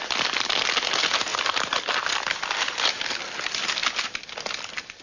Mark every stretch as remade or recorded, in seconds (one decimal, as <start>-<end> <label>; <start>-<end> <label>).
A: 0.0-5.0 recorded